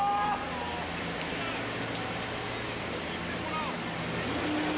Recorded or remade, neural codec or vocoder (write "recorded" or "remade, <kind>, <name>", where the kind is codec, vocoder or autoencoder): recorded